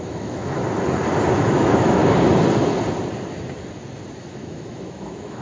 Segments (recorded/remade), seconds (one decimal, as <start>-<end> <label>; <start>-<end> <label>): 0.0-0.6 remade; 0.6-1.3 recorded; 1.3-2.0 remade; 2.0-4.2 recorded; 4.2-5.4 remade